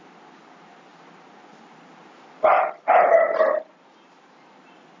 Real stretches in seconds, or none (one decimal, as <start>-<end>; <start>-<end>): 0.0-5.0